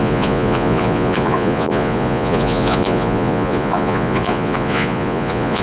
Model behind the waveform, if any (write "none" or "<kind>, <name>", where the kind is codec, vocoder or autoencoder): vocoder, Vocos